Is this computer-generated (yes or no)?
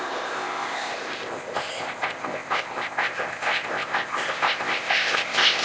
yes